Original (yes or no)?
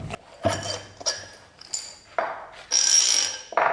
yes